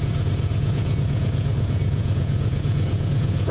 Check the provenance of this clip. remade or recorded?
remade